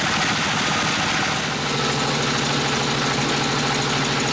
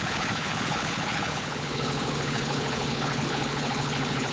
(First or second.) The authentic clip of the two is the first